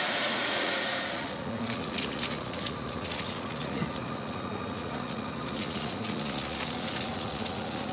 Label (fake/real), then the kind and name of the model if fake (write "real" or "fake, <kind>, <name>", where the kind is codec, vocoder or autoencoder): fake, vocoder, Vocos